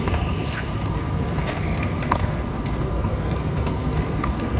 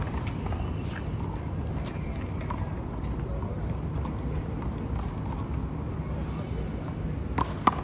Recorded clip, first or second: second